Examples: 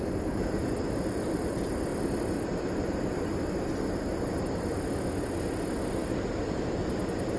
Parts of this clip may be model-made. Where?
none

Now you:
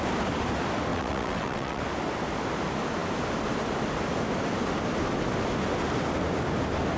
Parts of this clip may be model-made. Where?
0.9-1.8 (vocoder, WaveNeXt)

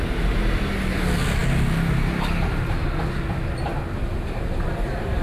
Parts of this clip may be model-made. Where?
none

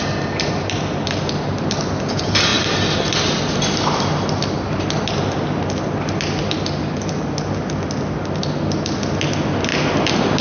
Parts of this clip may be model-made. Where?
none

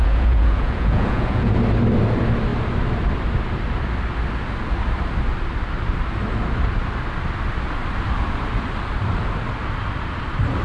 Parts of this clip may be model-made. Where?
0.0-1.5 (vocoder, Vocos)

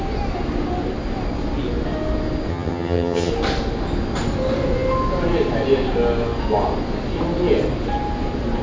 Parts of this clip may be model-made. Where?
2.5-3.3 (vocoder, HiFi-GAN)